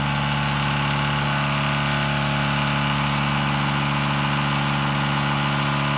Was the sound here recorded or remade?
recorded